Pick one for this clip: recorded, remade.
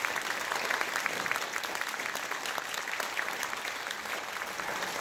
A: recorded